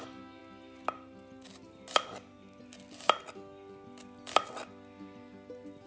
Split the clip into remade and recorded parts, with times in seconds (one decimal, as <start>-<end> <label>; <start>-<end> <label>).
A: 0.0-5.9 recorded